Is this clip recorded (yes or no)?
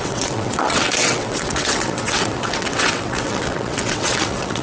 no